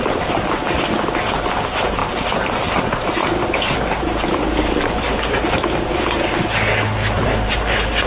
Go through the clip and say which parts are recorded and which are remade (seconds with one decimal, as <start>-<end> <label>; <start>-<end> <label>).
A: 0.0-8.1 recorded